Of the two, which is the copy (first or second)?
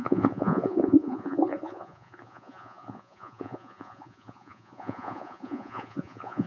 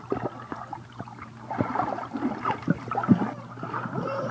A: first